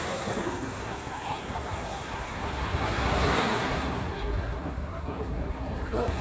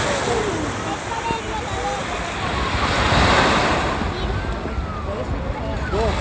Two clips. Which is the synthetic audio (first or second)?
first